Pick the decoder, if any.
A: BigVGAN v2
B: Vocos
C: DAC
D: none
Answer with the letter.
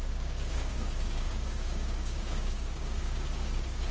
C